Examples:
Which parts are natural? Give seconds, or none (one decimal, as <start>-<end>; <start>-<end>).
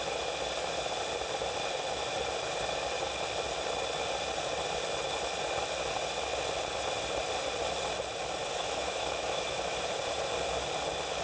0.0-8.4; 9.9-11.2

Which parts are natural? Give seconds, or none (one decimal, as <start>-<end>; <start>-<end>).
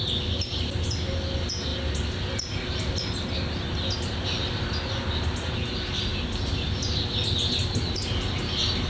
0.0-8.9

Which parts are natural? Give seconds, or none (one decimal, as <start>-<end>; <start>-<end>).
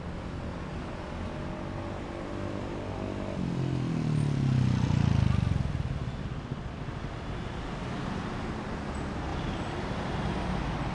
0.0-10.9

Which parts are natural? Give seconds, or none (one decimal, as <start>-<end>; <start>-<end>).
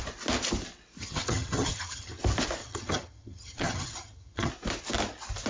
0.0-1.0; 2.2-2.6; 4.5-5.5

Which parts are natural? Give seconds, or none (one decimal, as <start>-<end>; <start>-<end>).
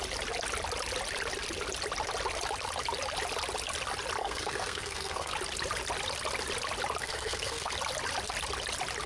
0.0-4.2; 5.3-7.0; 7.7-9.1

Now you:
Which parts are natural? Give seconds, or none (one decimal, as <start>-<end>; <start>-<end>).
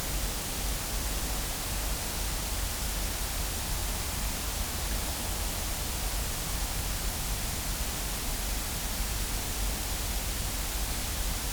0.0-11.5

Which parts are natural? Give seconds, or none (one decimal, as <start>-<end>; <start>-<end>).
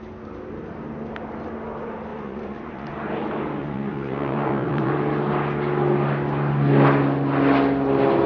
0.0-2.1; 2.9-3.6; 4.9-8.3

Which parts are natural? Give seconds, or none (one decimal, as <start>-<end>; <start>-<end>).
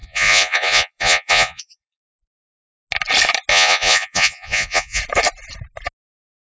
2.0-3.5; 5.0-6.4